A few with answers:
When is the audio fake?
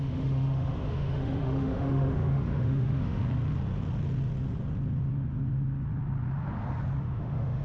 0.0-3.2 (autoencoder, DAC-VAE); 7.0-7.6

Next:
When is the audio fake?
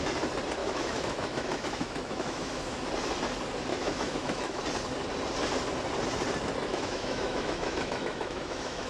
0.6-2.9 (autoencoder, DAC-VAE); 3.7-4.6; 6.7-8.9